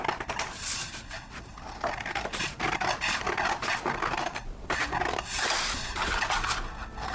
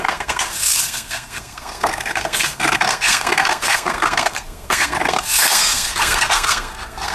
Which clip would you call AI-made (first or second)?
second